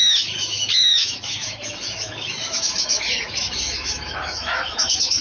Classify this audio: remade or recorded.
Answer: remade